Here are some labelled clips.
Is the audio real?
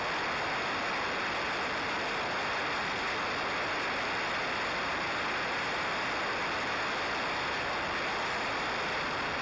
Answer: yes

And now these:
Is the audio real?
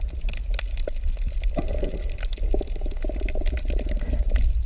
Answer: yes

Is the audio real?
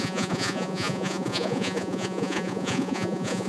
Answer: no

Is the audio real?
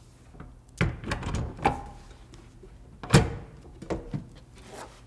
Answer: yes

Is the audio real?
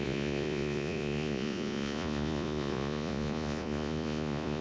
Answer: no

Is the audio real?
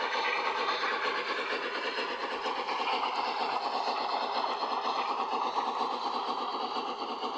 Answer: yes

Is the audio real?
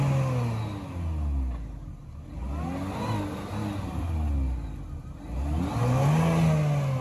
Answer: yes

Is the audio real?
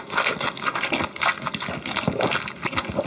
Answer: yes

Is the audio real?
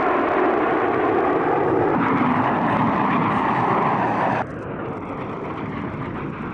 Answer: yes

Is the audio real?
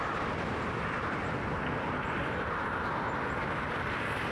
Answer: yes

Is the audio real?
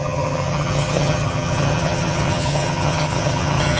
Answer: no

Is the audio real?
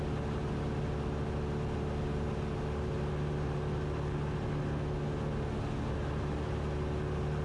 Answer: yes